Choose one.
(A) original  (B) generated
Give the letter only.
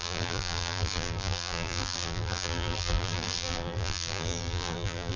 B